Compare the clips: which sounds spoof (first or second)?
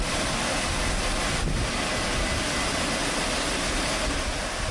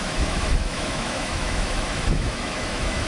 second